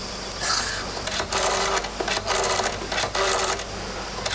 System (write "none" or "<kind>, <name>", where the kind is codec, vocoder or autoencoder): none